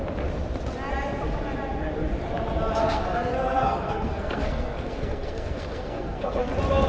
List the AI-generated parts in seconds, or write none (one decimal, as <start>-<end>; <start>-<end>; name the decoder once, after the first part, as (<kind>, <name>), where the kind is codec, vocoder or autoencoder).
2.8-6.5 (codec, SNAC)